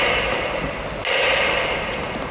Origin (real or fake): real